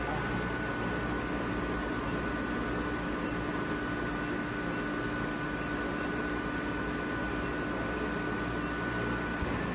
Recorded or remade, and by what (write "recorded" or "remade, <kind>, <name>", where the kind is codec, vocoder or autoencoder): recorded